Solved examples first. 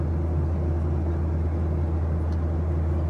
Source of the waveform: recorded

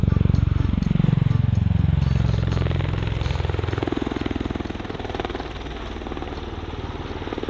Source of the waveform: recorded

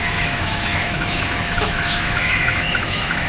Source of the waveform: remade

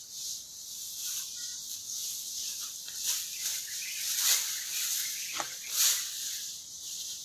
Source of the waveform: recorded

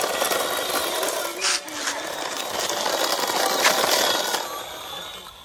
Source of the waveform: recorded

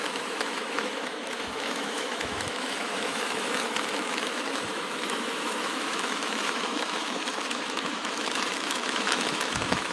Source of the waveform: remade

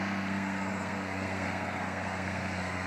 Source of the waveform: remade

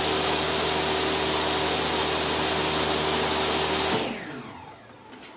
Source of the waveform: recorded